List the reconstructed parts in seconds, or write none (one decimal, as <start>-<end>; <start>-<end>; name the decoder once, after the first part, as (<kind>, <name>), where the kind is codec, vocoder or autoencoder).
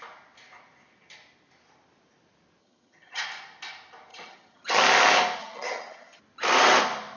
2.6-3.2 (vocoder, HiFi-GAN); 4.1-4.8; 5.4-6.2